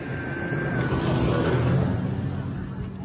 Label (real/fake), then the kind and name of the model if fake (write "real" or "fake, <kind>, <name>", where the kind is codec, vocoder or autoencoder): real